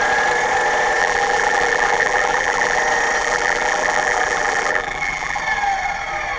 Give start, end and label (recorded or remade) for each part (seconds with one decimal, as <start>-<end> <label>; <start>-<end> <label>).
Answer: 0.0-1.0 recorded; 1.0-2.8 remade; 2.8-3.2 recorded; 3.2-5.4 remade; 5.4-6.4 recorded